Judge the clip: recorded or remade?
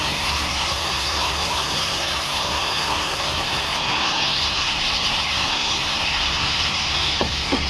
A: remade